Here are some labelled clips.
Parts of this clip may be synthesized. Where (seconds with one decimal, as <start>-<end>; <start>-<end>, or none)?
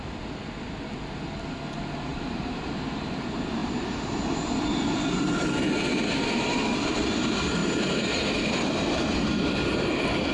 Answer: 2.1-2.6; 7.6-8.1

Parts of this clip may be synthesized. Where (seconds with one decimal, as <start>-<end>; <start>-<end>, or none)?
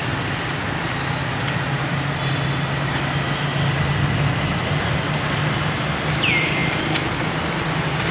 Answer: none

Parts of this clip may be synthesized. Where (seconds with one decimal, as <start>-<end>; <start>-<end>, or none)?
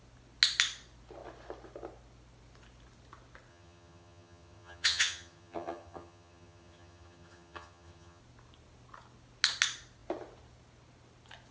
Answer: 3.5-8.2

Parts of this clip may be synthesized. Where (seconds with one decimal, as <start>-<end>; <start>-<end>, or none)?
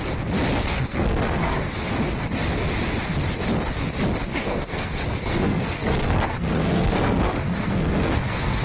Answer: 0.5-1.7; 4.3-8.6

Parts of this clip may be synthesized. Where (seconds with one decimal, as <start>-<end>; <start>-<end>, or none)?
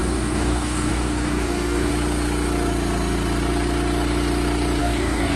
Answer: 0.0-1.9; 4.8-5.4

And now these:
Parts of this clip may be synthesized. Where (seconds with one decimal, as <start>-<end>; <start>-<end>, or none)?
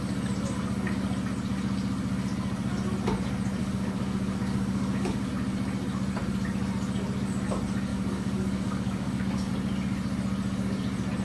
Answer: 3.6-5.3; 7.9-9.5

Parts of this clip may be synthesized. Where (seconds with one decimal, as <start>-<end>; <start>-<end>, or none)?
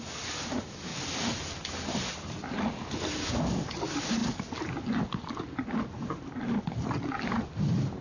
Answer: 0.9-2.9